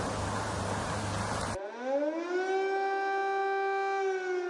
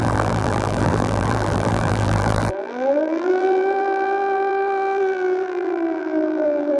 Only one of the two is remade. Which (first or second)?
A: second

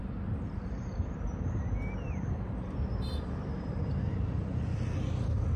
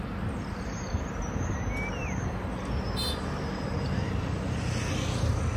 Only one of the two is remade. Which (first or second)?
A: first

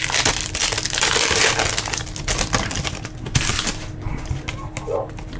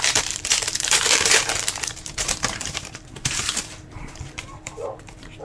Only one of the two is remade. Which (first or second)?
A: second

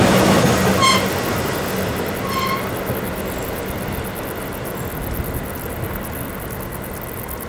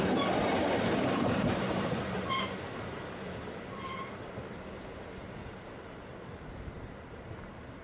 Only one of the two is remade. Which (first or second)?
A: second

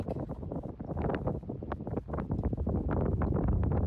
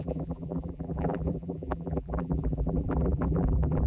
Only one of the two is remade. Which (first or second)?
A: second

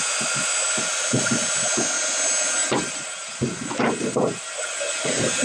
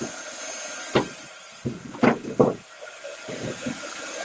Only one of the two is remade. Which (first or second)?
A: second